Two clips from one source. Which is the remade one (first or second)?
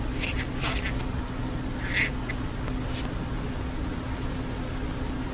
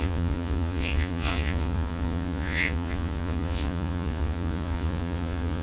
second